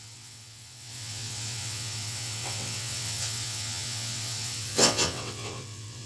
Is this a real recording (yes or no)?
no